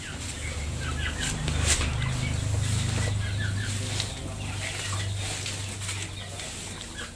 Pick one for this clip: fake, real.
real